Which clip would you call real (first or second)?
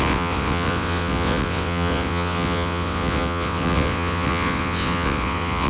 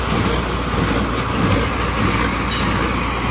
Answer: second